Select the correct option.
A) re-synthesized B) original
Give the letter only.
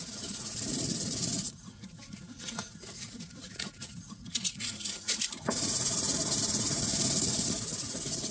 A